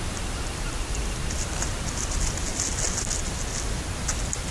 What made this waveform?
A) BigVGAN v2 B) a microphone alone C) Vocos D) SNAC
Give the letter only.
B